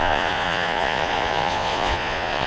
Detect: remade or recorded remade